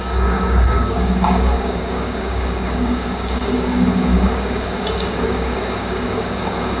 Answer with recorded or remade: remade